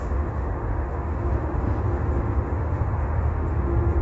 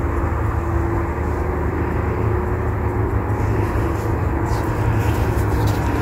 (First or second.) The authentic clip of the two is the second